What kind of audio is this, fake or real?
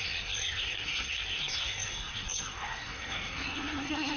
fake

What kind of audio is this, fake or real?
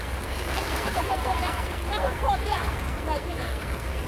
fake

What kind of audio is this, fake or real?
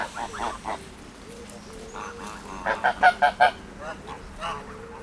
real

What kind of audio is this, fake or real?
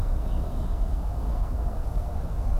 fake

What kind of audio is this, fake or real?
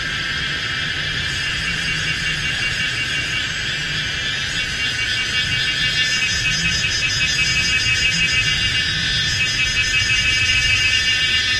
real